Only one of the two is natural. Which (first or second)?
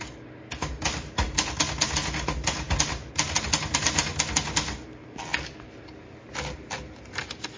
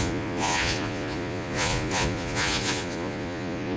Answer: first